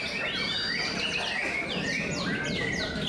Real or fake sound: real